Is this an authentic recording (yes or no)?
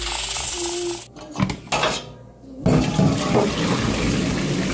yes